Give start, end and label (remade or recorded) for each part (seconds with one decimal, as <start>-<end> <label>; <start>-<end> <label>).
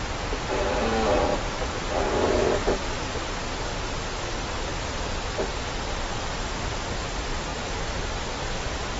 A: 0.0-1.3 recorded; 1.3-1.9 remade; 1.9-7.5 recorded; 7.5-8.2 remade; 8.2-9.0 recorded